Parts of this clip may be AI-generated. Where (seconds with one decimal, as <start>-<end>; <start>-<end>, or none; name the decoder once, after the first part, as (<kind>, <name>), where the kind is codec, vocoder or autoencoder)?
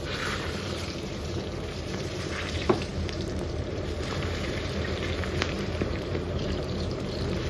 0.0-7.5 (vocoder, BigVGAN v2)